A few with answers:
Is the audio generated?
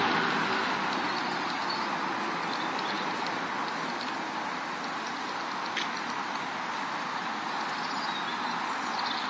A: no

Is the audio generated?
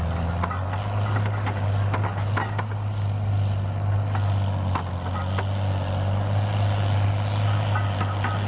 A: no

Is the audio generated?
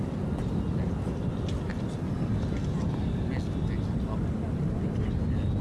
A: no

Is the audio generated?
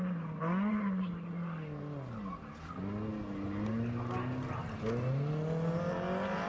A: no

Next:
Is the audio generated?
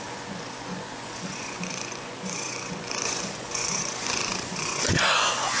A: yes